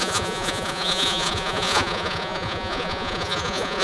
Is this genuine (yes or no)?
no